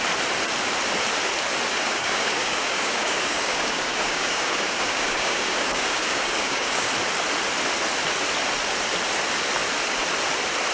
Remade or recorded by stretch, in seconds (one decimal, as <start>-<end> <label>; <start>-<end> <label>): 0.0-1.7 recorded; 1.7-6.9 remade; 6.9-10.7 recorded